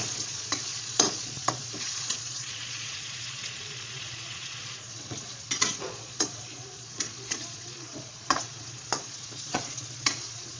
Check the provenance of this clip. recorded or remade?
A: remade